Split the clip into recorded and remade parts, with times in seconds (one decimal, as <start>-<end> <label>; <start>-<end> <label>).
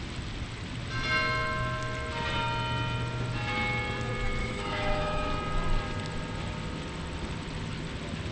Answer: 0.0-4.4 recorded; 4.4-5.3 remade; 5.3-8.3 recorded